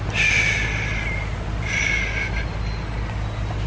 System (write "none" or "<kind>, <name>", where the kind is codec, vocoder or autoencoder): none